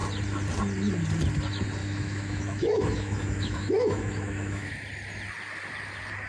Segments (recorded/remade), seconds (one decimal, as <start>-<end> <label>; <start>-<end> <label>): 0.0-1.8 recorded; 1.8-4.7 remade; 4.7-6.3 recorded